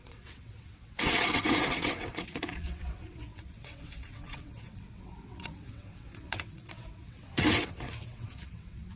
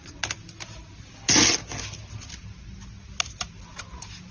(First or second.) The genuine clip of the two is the second